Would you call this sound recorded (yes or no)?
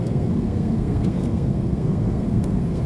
no